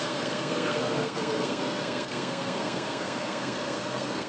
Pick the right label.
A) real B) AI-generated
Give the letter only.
B